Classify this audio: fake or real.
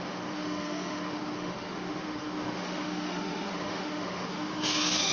fake